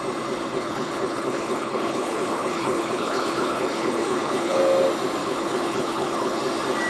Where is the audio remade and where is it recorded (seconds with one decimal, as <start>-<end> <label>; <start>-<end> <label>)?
0.0-0.5 recorded; 0.5-4.6 remade; 4.6-5.2 recorded; 5.2-6.4 remade; 6.4-6.9 recorded